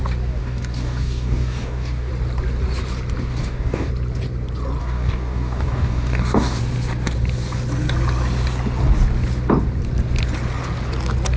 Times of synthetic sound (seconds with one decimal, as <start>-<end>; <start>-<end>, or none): 0.4-2.1; 3.3-3.9; 4.8-6.6